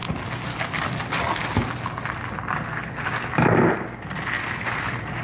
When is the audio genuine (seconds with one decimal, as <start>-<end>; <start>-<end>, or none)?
0.0-5.2